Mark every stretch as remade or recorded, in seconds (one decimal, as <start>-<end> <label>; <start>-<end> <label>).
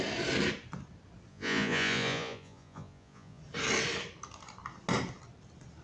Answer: 0.0-1.3 recorded; 1.3-3.4 remade; 3.4-5.8 recorded